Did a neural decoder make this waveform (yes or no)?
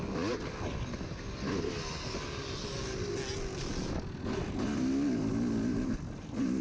no